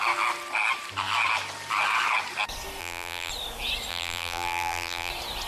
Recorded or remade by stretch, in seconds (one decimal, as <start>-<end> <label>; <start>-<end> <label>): 0.0-2.8 recorded; 2.8-3.3 remade; 3.3-3.9 recorded; 3.9-5.1 remade; 5.1-5.5 recorded

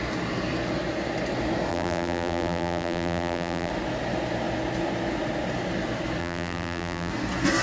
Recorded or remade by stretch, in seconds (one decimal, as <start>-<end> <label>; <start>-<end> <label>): 0.0-1.7 recorded; 1.7-3.7 remade; 3.7-6.2 recorded; 6.2-7.1 remade; 7.1-7.6 recorded

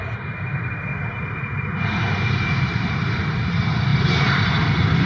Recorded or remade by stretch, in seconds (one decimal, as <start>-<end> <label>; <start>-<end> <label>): 0.0-3.9 recorded; 3.9-4.5 remade; 4.5-5.1 recorded

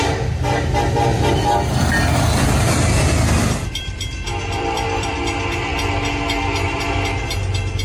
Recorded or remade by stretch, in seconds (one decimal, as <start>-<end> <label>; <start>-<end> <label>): 0.0-1.1 recorded; 1.1-3.1 remade; 3.1-3.6 recorded; 3.6-5.2 remade; 5.2-7.8 recorded

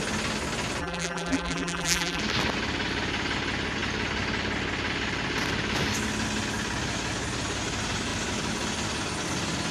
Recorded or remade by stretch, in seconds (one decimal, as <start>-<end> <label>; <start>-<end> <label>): 0.0-0.8 recorded; 0.8-2.2 remade; 2.2-9.7 recorded